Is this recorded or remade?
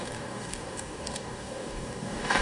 remade